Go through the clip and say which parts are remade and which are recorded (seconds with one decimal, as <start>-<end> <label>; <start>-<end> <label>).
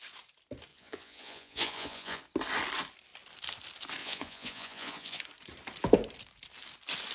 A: 0.0-0.7 recorded; 0.7-2.2 remade; 2.2-4.0 recorded; 4.0-5.2 remade; 5.2-7.1 recorded